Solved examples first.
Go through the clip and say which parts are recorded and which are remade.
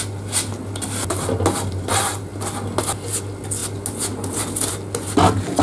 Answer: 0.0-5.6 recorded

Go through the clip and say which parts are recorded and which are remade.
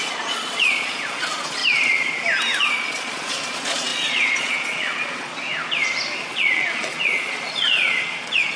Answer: 0.0-1.6 remade; 1.6-2.6 recorded; 2.6-5.3 remade; 5.3-6.2 recorded; 6.2-8.6 remade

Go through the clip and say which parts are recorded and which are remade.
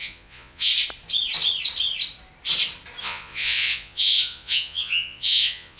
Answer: 0.0-0.7 remade; 0.7-3.0 recorded; 3.0-5.8 remade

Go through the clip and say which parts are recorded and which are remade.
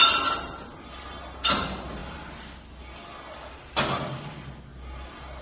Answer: 0.0-5.4 recorded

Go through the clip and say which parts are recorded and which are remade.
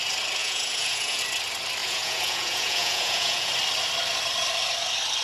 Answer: 0.0-0.4 recorded; 0.4-1.2 remade; 1.2-1.8 recorded; 1.8-3.5 remade; 3.5-5.2 recorded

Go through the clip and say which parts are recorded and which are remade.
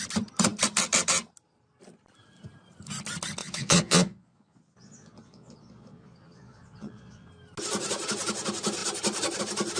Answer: 0.0-3.4 recorded; 3.4-7.3 remade; 7.3-9.8 recorded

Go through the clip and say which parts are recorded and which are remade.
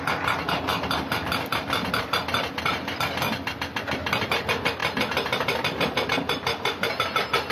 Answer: 0.0-7.5 recorded